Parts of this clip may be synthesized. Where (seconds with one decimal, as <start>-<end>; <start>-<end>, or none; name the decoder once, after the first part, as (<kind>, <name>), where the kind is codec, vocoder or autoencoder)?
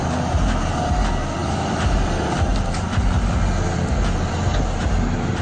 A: 1.4-3.1 (vocoder, BigVGAN v2)